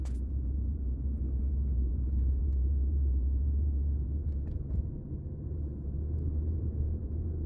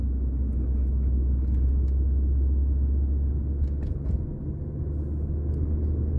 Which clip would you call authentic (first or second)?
second